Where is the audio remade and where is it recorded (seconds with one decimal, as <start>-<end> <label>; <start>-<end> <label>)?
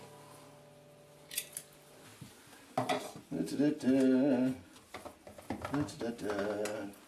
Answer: 0.0-7.1 recorded